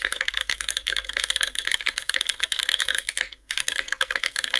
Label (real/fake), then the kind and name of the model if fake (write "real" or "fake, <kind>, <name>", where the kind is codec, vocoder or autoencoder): fake, codec, SNAC